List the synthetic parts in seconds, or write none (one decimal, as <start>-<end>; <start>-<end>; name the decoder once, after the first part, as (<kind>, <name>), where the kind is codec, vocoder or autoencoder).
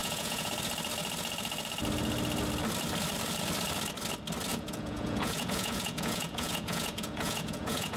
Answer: 0.0-0.5 (vocoder, Vocos); 4.5-8.0